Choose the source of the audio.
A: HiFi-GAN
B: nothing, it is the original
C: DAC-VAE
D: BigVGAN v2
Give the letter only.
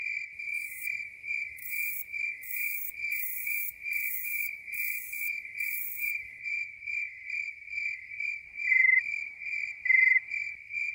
D